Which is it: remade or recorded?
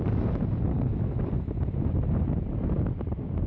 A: recorded